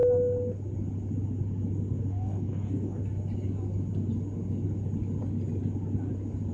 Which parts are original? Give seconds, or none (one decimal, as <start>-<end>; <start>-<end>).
0.0-2.1; 3.0-6.5